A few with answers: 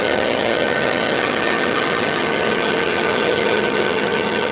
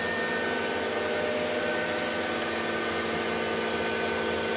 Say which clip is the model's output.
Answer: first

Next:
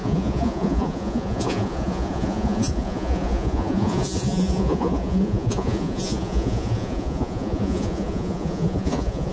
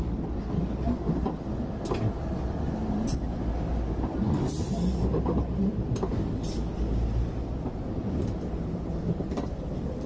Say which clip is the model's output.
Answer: first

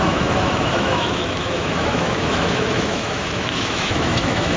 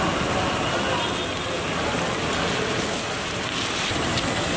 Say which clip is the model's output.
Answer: first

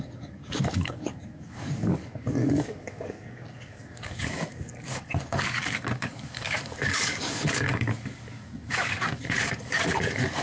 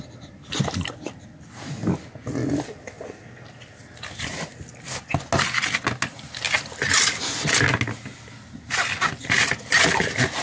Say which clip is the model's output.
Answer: first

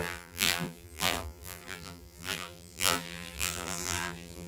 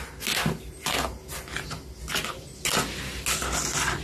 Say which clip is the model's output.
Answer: first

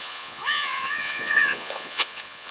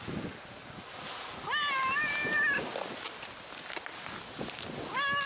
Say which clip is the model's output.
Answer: first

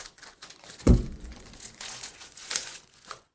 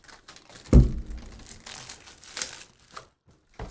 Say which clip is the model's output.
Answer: first